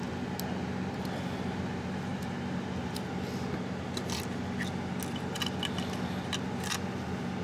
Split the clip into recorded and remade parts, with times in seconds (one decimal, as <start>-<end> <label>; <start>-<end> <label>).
0.0-7.4 recorded